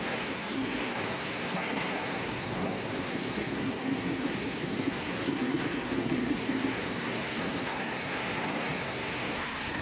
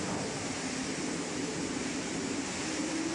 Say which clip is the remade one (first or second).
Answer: first